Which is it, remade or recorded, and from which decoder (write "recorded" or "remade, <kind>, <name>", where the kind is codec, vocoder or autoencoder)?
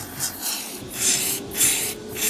remade, vocoder, BigVGAN v2